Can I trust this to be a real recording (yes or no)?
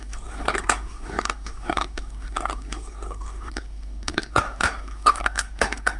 no